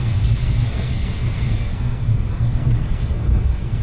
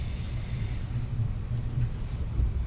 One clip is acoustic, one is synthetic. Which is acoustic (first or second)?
second